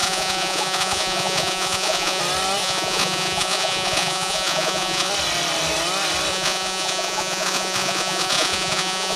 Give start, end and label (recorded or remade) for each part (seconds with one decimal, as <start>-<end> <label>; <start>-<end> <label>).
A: 0.0-2.2 remade; 2.2-2.6 recorded; 2.6-5.1 remade; 5.1-6.3 recorded; 6.3-9.2 remade